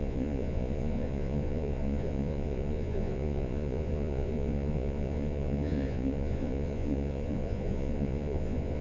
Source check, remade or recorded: remade